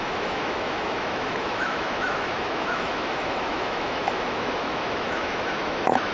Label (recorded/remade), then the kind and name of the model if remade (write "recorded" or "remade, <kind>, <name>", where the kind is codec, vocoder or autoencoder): remade, autoencoder, DAC-VAE